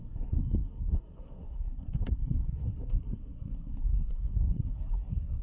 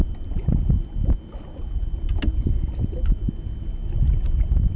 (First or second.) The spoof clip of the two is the first